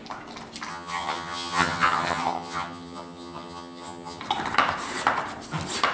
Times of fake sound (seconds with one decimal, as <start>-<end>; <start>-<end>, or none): 0.7-4.2